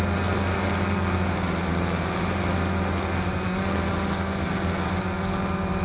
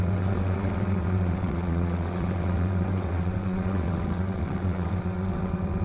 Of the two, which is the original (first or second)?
first